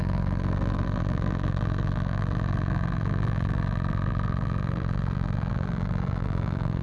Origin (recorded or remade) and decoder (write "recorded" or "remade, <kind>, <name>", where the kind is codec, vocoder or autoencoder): remade, vocoder, BigVGAN v2